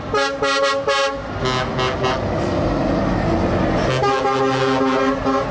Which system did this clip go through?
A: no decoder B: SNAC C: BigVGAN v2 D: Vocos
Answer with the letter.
A